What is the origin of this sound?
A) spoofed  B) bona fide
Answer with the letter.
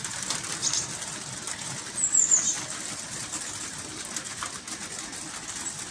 B